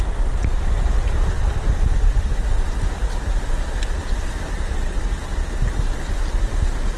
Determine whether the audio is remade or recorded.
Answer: recorded